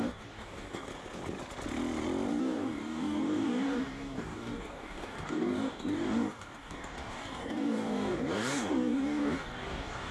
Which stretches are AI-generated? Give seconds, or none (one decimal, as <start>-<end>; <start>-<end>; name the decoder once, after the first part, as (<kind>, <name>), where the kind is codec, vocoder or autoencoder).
0.0-0.9 (codec, DAC); 2.4-10.1